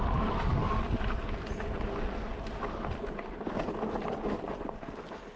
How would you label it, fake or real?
real